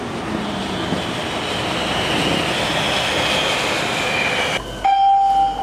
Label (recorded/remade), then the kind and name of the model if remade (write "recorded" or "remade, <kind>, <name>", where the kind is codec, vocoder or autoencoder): recorded